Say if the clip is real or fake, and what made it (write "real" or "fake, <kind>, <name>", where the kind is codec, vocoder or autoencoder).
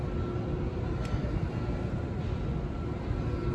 real